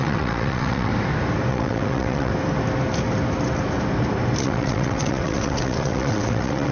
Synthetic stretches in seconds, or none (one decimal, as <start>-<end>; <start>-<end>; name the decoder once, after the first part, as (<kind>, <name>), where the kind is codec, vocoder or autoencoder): 0.0-0.9 (vocoder, WaveNeXt); 1.5-2.3; 4.4-6.7